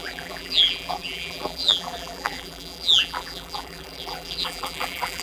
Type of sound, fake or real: fake